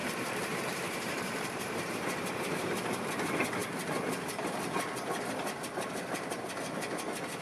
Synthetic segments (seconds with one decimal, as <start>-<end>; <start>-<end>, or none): 0.0-2.0